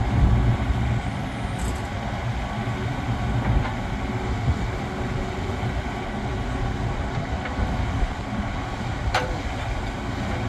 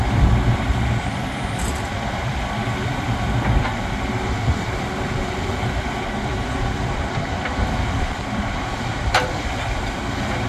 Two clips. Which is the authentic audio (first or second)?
first